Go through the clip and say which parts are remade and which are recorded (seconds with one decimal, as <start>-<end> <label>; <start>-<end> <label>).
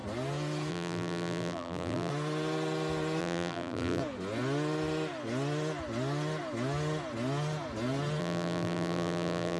0.0-0.7 recorded; 0.7-2.1 remade; 2.1-3.2 recorded; 3.2-4.0 remade; 4.0-8.2 recorded; 8.2-9.6 remade